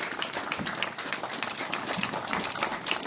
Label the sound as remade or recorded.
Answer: recorded